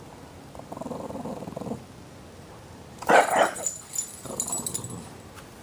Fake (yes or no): no